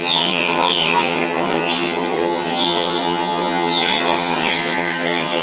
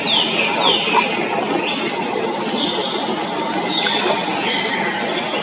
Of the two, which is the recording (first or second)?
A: second